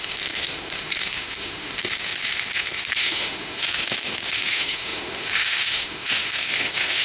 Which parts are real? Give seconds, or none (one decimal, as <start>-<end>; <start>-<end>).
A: none